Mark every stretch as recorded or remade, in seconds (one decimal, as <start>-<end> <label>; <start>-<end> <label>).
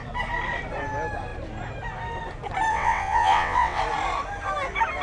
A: 0.0-2.7 recorded; 2.7-3.8 remade; 3.8-5.0 recorded